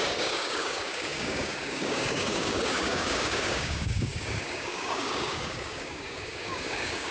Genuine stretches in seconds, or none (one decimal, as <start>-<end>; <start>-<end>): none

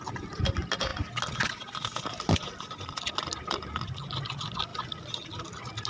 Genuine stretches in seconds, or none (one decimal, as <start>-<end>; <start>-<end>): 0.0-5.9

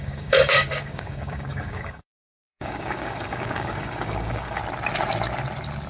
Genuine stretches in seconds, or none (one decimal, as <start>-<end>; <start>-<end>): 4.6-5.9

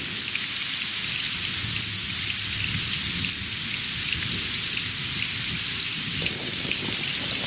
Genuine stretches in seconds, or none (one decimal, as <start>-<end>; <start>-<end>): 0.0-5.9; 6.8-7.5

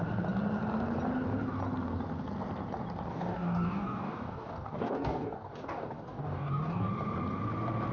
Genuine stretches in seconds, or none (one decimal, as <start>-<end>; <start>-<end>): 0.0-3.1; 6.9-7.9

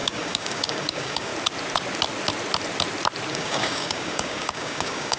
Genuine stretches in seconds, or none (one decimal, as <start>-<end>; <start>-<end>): 1.3-3.3